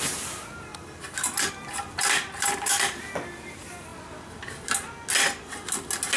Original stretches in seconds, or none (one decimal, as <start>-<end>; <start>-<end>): 0.7-1.5; 3.9-6.2